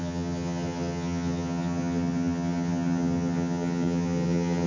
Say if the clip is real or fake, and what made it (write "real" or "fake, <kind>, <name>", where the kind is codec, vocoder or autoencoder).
fake, vocoder, HiFi-GAN